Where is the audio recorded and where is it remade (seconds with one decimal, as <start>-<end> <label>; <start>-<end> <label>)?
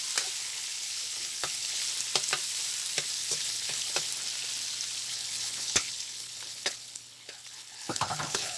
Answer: 0.0-0.4 recorded; 0.4-1.8 remade; 1.8-3.2 recorded; 3.2-4.1 remade; 4.1-5.1 recorded; 5.1-8.6 remade